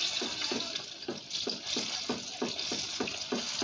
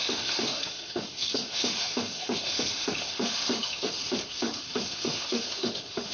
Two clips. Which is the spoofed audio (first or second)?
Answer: second